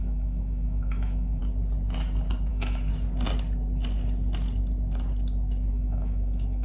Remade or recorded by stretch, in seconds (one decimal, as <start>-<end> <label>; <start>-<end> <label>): 0.0-1.4 remade; 1.4-2.5 recorded; 2.5-2.9 remade; 2.9-5.7 recorded; 5.7-6.6 remade